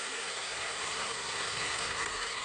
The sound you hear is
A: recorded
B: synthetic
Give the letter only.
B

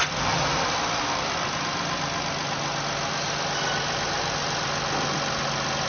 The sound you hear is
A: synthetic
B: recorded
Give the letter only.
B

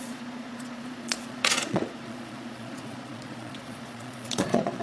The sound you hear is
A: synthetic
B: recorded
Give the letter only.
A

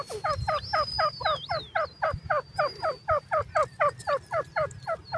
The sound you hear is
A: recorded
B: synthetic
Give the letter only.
A